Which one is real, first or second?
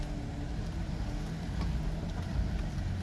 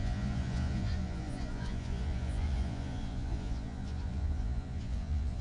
first